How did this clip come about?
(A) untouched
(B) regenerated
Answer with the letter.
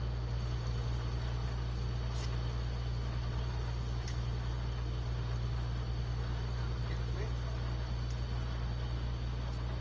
A